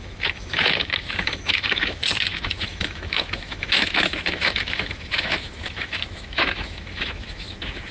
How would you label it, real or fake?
fake